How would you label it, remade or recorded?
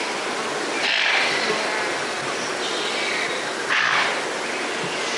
recorded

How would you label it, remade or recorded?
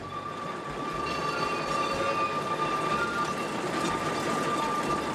recorded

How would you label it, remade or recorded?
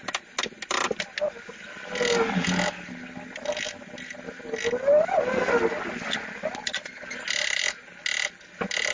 recorded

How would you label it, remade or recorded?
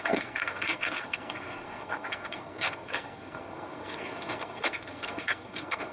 remade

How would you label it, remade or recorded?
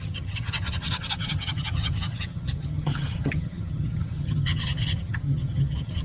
remade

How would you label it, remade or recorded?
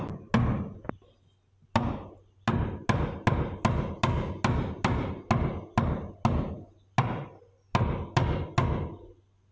recorded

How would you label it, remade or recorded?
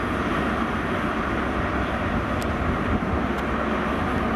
recorded